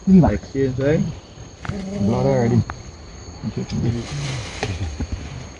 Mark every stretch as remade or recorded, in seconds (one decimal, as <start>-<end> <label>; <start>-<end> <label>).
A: 0.0-5.6 recorded